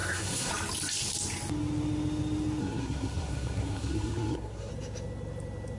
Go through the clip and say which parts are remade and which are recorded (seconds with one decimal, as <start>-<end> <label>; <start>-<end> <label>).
0.0-0.5 remade; 0.5-2.6 recorded; 2.6-4.7 remade; 4.7-5.8 recorded